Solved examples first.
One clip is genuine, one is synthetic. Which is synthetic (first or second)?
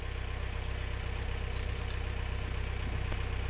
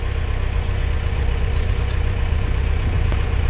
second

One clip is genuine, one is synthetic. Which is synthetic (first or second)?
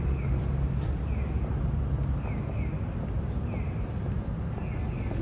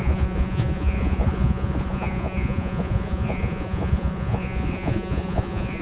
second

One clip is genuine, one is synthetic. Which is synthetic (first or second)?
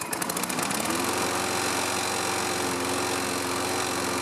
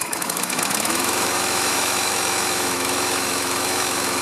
second